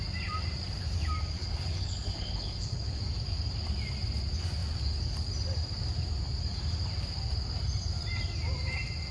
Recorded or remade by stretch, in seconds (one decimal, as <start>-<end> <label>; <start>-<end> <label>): 0.0-1.4 recorded; 1.4-3.0 remade; 3.0-9.1 recorded